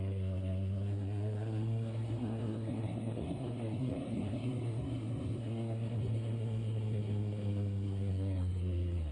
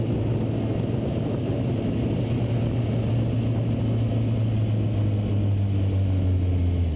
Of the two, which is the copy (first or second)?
first